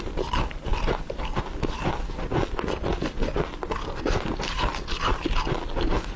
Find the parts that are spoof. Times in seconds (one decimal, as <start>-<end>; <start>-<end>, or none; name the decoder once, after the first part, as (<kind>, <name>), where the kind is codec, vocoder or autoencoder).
none